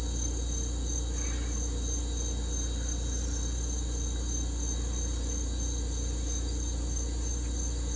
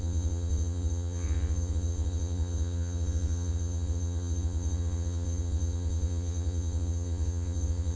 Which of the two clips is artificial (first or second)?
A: second